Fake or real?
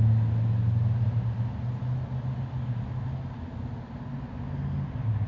real